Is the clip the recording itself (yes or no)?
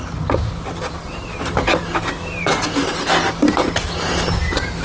yes